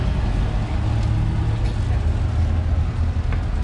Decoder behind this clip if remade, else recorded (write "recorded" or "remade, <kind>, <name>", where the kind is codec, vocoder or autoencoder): recorded